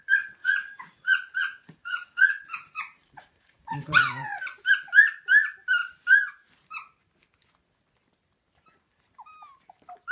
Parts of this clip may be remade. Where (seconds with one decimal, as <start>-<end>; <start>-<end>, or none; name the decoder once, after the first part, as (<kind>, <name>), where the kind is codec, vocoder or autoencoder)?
0.4-4.4 (vocoder, Vocos)